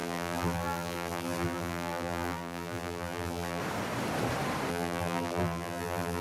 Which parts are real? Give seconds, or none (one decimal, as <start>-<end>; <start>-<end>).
3.6-4.7